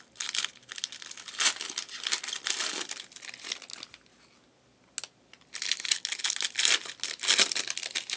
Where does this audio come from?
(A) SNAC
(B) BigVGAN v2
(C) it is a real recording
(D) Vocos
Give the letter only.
C